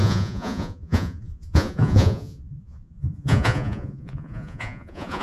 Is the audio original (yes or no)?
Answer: no